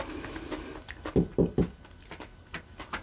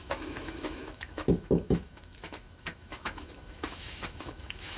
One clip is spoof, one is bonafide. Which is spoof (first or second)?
second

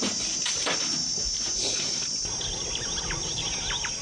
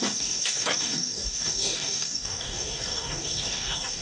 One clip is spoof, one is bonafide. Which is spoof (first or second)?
second